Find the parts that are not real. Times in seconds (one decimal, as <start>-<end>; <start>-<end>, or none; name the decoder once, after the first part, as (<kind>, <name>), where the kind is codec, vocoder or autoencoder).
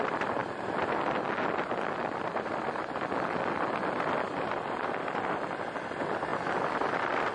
none